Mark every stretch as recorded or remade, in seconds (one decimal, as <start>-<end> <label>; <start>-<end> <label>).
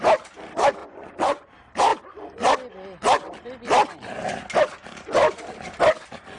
0.0-0.8 recorded; 0.8-1.5 remade; 1.5-6.4 recorded